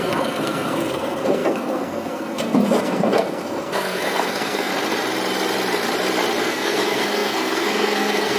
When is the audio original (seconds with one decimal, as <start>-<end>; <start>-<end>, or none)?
4.7-6.4